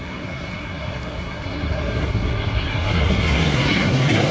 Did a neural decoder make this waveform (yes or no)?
yes